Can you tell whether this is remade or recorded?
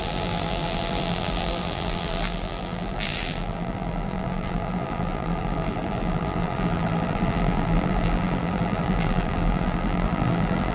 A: remade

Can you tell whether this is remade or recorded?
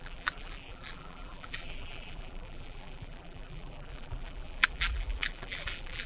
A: remade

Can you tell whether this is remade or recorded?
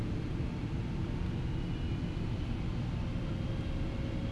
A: recorded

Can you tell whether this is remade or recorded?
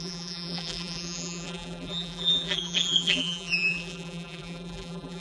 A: remade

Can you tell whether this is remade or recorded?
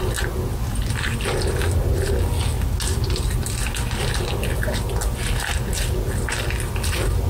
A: recorded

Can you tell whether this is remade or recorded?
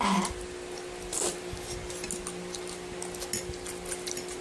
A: recorded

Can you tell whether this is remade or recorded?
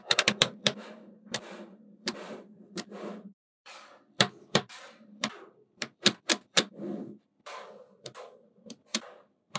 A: remade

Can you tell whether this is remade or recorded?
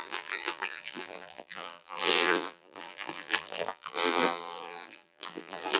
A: remade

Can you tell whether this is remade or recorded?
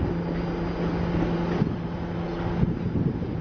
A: recorded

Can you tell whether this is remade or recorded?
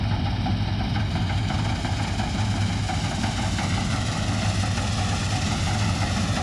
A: recorded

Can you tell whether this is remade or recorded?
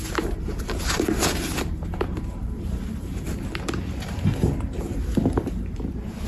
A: remade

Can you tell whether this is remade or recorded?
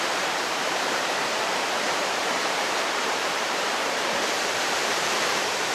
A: remade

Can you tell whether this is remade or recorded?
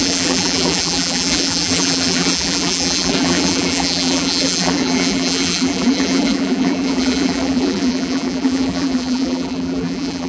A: remade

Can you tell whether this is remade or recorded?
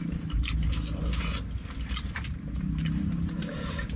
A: recorded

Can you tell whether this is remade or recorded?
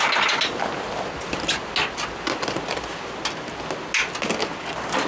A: recorded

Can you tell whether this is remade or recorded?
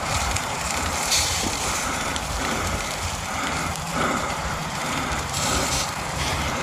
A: remade